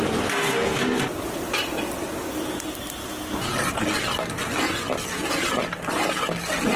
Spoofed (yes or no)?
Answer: no